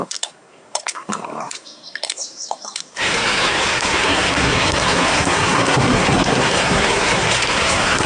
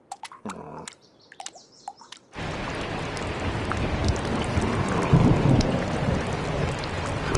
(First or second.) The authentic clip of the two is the second